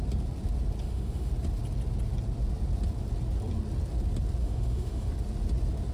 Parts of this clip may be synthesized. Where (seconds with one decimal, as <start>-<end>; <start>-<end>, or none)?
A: 0.8-1.3; 4.4-5.1